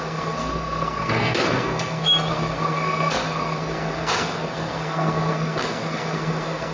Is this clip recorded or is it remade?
remade